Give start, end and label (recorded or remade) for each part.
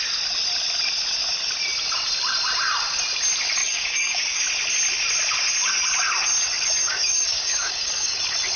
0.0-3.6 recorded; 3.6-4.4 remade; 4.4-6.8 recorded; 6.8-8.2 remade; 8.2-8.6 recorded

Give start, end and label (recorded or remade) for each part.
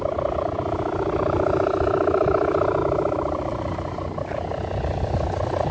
0.0-5.7 recorded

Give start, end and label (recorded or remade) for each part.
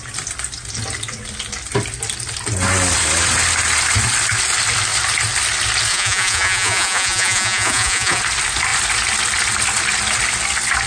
0.0-5.9 recorded; 5.9-8.2 remade; 8.2-10.9 recorded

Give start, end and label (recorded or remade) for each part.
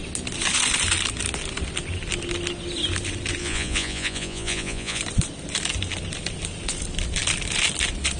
0.0-3.4 recorded; 3.4-5.0 remade; 5.0-8.2 recorded